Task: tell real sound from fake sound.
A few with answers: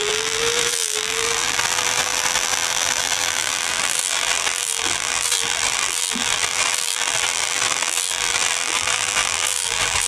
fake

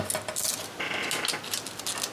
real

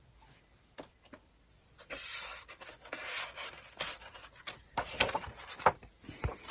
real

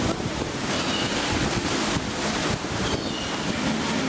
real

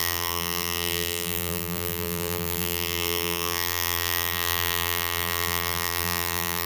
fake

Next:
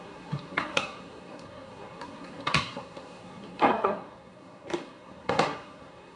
fake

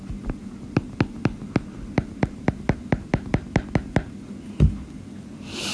real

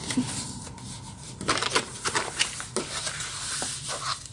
real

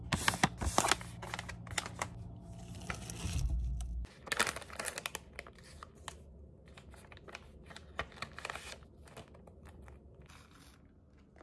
real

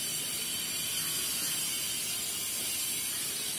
fake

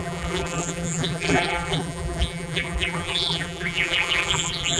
fake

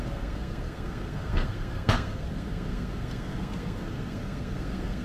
fake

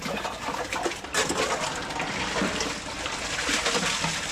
real